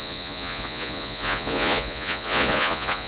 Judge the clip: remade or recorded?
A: remade